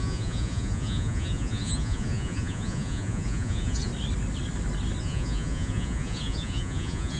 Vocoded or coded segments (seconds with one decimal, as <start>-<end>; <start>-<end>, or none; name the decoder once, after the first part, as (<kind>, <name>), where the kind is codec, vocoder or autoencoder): 0.0-3.9 (vocoder, Vocos); 5.0-7.2